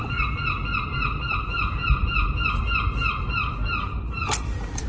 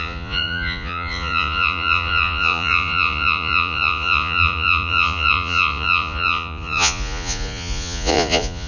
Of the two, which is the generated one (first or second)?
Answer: second